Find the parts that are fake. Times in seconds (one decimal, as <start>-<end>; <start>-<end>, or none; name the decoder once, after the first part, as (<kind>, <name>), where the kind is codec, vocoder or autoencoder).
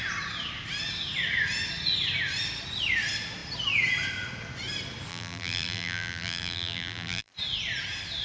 5.1-7.3 (vocoder, BigVGAN v2)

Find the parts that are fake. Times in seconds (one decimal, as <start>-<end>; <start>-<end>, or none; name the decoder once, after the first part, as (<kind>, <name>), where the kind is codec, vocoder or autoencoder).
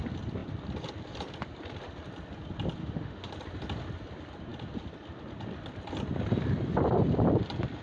2.8-3.3 (autoencoder, DAC-VAE)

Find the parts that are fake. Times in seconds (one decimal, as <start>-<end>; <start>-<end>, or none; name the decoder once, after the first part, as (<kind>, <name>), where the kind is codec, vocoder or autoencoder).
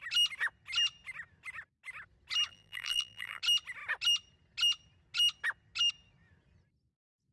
2.5-3.4 (vocoder, BigVGAN v2)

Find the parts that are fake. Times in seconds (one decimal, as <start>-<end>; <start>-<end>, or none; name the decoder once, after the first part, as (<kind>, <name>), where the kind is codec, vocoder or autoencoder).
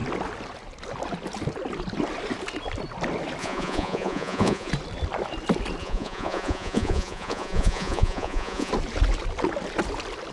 3.4-4.7 (vocoder, Vocos); 5.8-8.7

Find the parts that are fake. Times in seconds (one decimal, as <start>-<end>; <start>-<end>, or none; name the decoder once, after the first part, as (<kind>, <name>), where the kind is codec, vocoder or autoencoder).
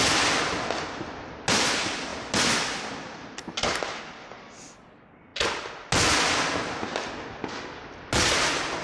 none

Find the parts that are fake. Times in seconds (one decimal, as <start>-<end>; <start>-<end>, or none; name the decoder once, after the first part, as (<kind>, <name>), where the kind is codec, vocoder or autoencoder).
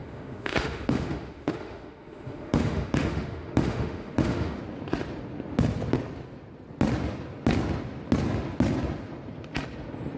0.0-4.6 (autoencoder, DAC-VAE)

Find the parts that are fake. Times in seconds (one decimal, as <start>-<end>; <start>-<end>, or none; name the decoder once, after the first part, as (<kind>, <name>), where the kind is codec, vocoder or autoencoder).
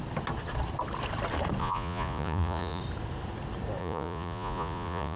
1.6-2.8 (vocoder, Vocos); 3.8-5.2